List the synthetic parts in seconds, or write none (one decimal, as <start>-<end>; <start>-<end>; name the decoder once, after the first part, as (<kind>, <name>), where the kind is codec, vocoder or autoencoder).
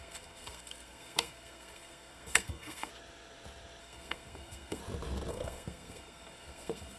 0.0-2.9 (codec, SNAC); 3.8-4.8; 5.3-7.0